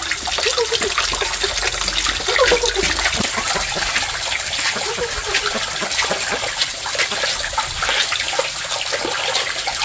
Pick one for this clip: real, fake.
real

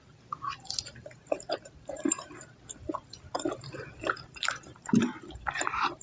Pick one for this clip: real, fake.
fake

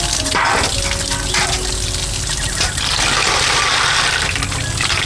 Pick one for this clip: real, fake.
real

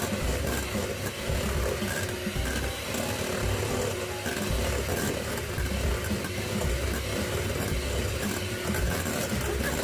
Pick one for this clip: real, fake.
real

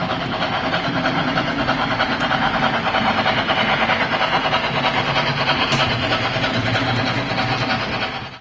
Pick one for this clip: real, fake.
real